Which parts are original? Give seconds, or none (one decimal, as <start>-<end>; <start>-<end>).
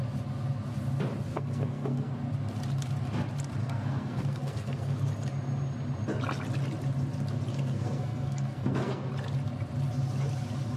0.0-1.3; 2.1-3.6; 5.1-7.5; 9.1-10.8